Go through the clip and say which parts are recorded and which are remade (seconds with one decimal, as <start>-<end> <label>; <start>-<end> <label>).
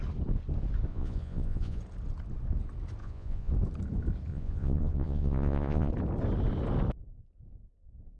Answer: 0.0-0.9 recorded; 0.9-1.8 remade; 1.8-3.0 recorded; 3.0-3.5 remade; 3.5-4.3 recorded; 4.3-5.9 remade; 5.9-8.2 recorded